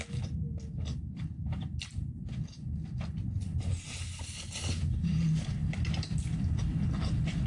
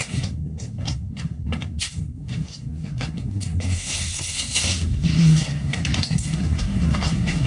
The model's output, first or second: second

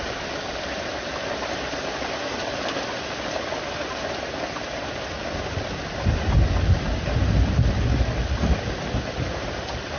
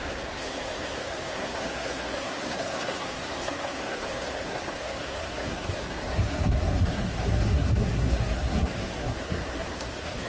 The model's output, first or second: second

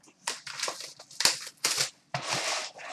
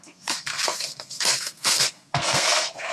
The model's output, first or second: second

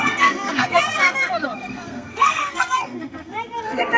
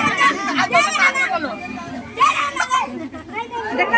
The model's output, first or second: first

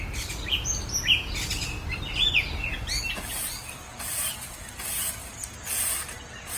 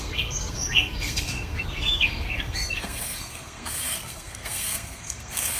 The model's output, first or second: second